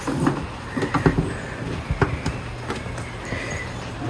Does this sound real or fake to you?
real